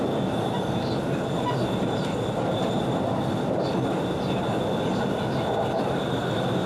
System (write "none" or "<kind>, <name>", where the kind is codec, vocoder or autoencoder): none